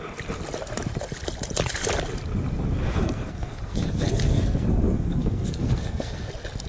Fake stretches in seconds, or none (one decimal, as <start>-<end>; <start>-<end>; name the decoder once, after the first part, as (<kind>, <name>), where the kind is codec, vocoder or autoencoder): 2.8-6.3 (codec, SNAC)